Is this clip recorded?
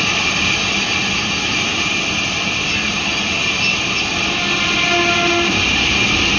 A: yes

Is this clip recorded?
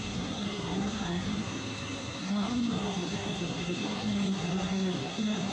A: no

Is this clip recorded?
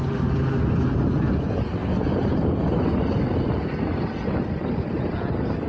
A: yes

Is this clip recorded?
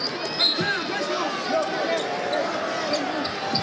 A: yes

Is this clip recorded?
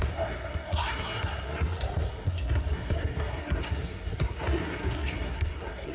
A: no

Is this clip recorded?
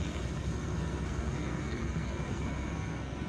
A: no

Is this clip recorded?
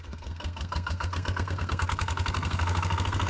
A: no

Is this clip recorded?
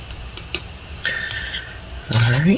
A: yes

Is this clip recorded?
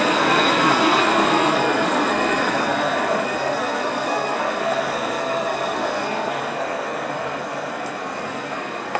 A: no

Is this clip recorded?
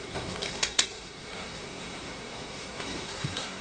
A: no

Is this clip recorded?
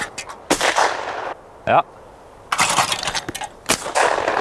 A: yes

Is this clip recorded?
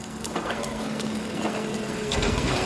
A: no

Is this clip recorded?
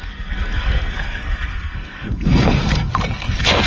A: no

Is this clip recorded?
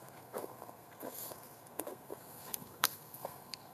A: no